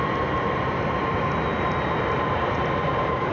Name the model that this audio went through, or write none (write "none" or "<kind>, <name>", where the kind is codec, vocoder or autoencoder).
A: none